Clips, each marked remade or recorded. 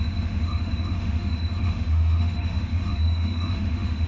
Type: remade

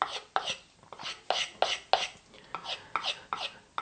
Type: recorded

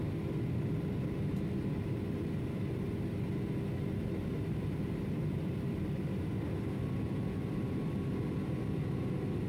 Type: recorded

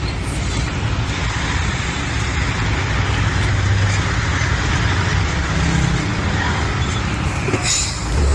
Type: recorded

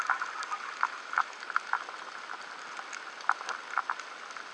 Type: recorded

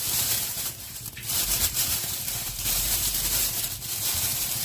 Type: remade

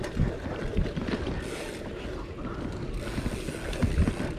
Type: recorded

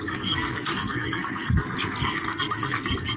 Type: remade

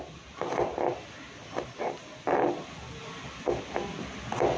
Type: recorded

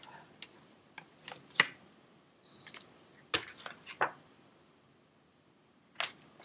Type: recorded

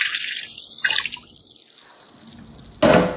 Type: recorded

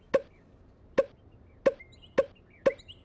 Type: recorded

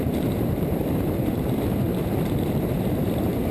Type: remade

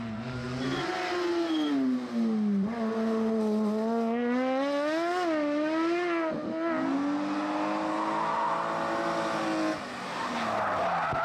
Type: recorded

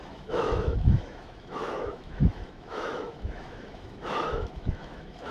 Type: remade